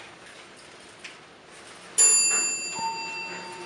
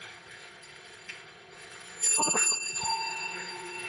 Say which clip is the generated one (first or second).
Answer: second